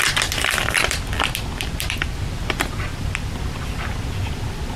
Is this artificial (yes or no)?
yes